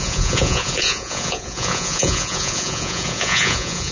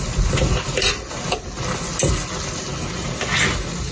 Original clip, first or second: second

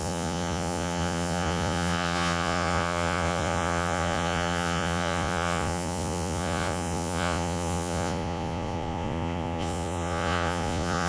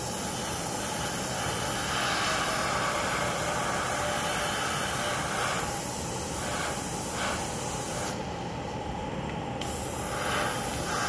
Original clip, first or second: second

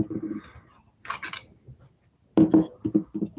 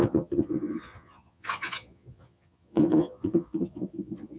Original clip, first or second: first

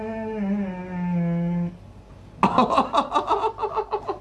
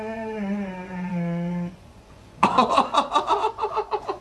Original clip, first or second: first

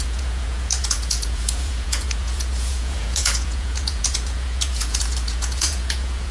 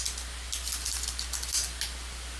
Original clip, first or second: second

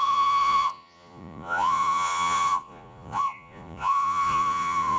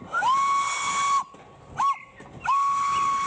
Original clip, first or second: second